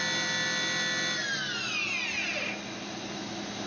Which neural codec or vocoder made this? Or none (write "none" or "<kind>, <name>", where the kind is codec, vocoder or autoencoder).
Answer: none